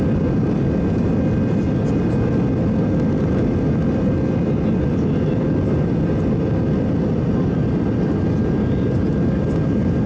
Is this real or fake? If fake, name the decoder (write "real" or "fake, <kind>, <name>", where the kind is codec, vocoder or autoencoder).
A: real